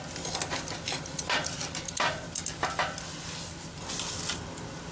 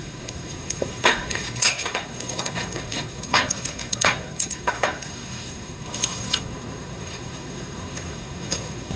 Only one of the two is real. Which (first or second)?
first